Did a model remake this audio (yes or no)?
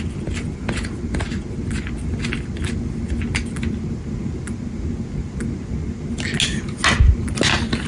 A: no